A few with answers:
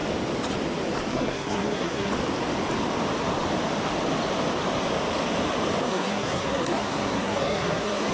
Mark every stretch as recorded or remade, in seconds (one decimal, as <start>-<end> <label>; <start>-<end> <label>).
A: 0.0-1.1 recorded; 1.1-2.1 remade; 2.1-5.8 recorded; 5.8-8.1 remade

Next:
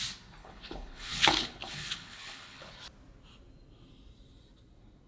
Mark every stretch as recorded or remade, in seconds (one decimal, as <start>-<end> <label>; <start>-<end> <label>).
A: 0.0-0.4 recorded; 0.4-2.7 remade; 2.7-5.1 recorded

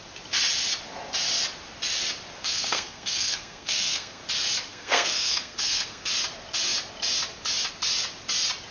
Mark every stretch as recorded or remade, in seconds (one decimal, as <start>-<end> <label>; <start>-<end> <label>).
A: 0.0-2.4 recorded; 2.4-4.2 remade; 4.2-4.7 recorded; 4.7-6.1 remade; 6.1-8.7 recorded

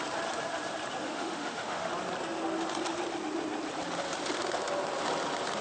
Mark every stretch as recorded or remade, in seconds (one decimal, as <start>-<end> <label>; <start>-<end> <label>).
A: 0.0-1.0 recorded; 1.0-1.9 remade; 1.9-5.6 recorded

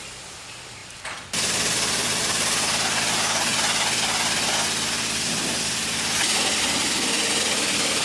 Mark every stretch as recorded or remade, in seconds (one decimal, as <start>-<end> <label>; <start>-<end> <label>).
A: 0.0-8.0 recorded